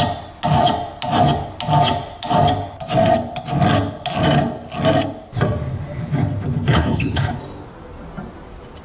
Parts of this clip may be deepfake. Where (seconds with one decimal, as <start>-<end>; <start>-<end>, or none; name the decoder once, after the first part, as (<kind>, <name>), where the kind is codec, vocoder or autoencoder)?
6.7-7.4 (codec, HILCodec)

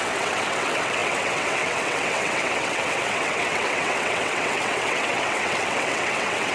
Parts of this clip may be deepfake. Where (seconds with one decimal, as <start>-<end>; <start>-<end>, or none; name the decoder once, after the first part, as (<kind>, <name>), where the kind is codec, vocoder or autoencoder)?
0.0-6.5 (vocoder, WaveNeXt)

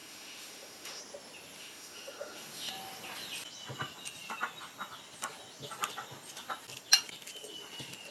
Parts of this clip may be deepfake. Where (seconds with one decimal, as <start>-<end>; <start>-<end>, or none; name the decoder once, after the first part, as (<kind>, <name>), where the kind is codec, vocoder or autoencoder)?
0.0-1.0 (autoencoder, DAC-VAE); 1.6-2.7

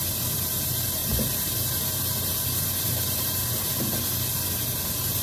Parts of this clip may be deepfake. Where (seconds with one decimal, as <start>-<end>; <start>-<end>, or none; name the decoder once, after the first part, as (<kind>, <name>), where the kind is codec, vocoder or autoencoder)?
none

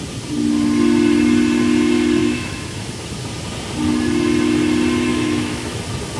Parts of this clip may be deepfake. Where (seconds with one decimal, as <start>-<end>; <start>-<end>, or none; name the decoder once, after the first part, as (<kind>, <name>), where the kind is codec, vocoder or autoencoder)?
2.2-3.0 (autoencoder, DAC-VAE); 5.1-5.8

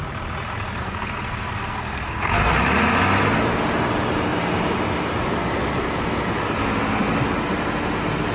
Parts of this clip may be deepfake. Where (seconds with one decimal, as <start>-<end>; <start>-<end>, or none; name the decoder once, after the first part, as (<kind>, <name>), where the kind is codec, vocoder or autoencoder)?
0.8-2.5 (codec, SNAC)

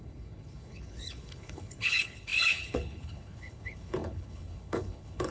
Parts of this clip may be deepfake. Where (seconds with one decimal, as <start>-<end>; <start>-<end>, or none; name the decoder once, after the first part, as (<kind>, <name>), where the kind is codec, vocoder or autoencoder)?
0.0-5.3 (codec, HILCodec)